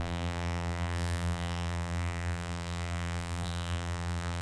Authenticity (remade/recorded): remade